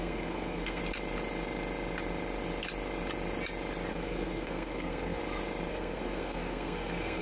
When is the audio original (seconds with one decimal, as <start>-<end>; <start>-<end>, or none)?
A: 0.8-3.9; 5.2-5.7